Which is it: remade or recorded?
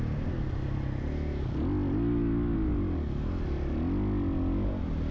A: recorded